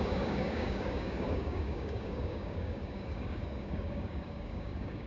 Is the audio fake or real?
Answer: fake